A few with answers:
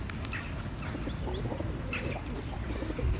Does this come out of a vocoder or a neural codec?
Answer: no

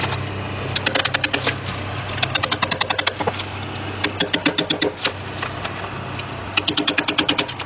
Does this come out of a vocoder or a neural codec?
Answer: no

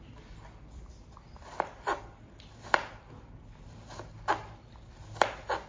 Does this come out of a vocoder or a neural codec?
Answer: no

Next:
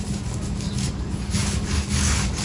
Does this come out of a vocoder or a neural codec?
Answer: yes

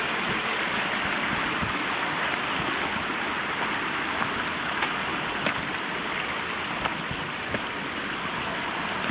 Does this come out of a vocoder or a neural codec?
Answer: no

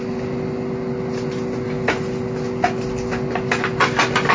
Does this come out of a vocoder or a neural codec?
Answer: no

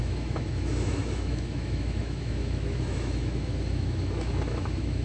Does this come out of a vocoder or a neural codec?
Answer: yes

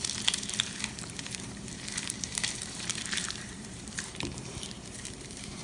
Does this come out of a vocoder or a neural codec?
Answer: yes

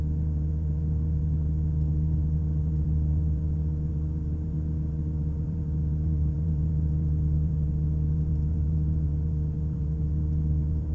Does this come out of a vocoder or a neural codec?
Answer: yes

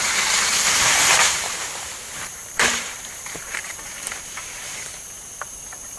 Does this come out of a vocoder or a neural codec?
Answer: yes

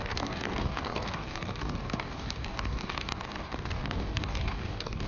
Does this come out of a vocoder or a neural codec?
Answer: yes